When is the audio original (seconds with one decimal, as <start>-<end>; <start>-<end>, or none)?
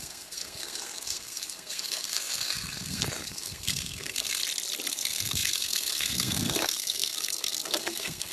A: 4.4-4.9